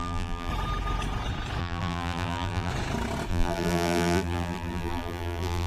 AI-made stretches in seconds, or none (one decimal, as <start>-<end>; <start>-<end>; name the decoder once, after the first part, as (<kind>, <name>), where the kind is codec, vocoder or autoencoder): 0.0-0.5 (vocoder, BigVGAN v2); 1.6-2.7; 3.3-5.7